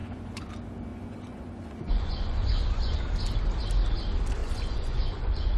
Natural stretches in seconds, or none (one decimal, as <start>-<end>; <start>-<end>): 0.5-0.9; 3.0-4.4